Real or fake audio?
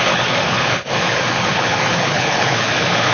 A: fake